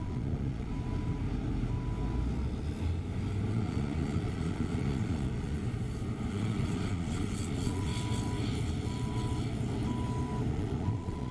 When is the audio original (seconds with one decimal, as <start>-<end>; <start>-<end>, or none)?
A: 0.7-3.5; 5.6-6.3; 7.9-10.5